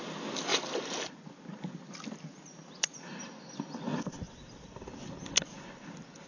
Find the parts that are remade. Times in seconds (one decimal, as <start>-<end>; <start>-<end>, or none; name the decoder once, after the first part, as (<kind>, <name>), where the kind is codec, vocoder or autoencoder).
none